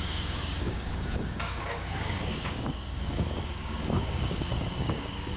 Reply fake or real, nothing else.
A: fake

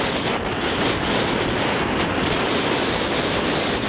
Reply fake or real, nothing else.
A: real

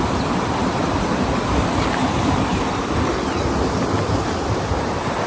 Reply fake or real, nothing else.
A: fake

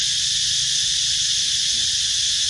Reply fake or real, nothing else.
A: real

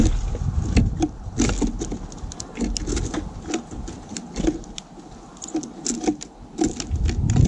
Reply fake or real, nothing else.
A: real